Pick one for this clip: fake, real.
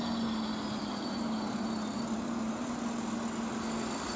real